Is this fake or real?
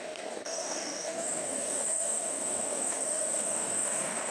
fake